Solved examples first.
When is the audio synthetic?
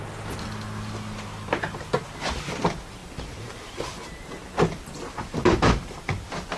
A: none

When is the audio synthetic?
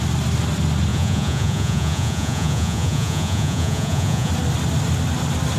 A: 0.9-4.3 (vocoder, Vocos)